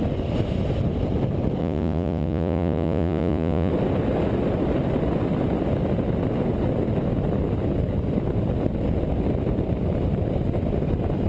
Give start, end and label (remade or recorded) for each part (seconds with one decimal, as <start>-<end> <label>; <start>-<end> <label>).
0.0-1.6 recorded; 1.6-3.7 remade; 3.7-11.3 recorded